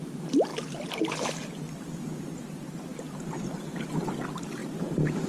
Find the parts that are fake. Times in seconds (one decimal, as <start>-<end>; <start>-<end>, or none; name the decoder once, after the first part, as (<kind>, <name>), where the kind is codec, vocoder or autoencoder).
4.6-5.3 (vocoder, BigVGAN v2)